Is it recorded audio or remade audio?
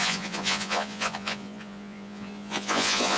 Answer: remade